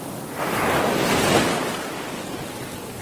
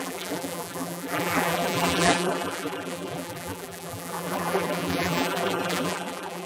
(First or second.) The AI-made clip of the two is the second